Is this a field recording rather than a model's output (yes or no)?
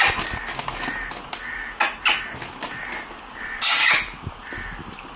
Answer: yes